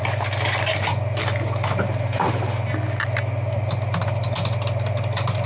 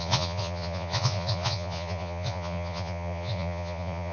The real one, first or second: first